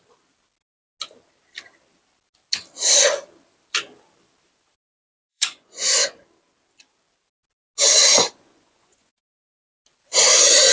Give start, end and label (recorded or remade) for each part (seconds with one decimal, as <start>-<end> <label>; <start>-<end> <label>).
0.0-5.3 recorded; 5.3-6.2 remade; 6.2-8.1 recorded; 8.1-9.4 remade; 9.4-10.7 recorded